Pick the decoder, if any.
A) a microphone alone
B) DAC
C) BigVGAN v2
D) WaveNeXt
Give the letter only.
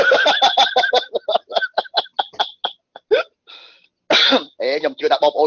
A